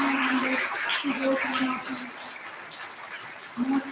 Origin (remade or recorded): recorded